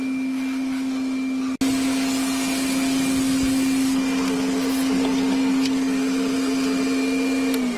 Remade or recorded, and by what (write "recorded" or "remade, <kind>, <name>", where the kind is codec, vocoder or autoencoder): recorded